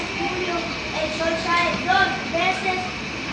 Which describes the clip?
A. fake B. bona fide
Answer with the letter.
B